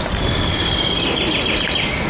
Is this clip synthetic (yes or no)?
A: no